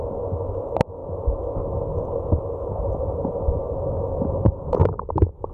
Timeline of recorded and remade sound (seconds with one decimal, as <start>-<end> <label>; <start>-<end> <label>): 0.0-5.5 recorded